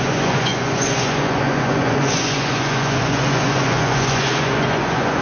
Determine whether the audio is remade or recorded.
remade